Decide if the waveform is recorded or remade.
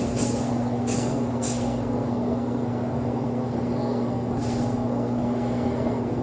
remade